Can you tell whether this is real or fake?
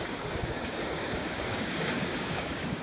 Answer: fake